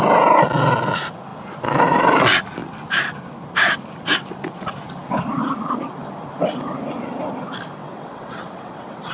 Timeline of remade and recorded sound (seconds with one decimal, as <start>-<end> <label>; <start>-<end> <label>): 0.0-7.8 recorded; 7.8-9.1 remade